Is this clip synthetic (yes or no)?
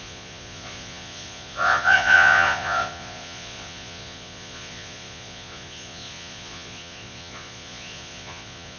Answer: yes